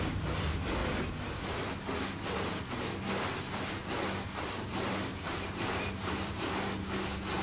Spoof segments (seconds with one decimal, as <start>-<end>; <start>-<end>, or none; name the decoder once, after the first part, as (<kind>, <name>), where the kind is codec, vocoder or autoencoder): 5.1-6.5 (vocoder, BigVGAN v2)